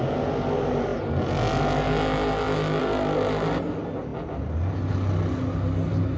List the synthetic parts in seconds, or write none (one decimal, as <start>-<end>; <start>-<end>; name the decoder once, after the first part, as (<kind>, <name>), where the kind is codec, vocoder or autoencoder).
none